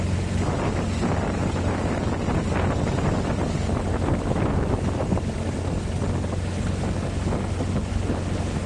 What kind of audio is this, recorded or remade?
recorded